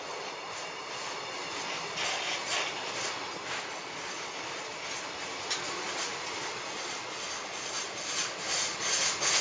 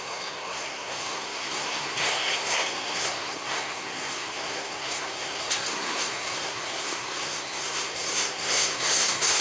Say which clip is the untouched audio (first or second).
first